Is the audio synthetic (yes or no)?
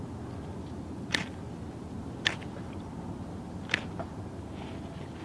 no